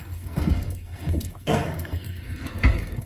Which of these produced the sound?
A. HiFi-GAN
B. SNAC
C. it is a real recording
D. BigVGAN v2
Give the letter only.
B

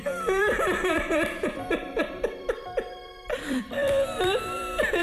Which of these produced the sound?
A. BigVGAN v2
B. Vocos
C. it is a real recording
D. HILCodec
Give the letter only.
A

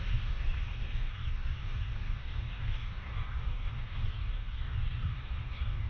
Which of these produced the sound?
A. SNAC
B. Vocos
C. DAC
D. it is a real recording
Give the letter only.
C